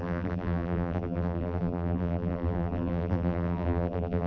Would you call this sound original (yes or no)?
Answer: no